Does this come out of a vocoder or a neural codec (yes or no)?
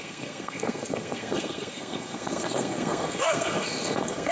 yes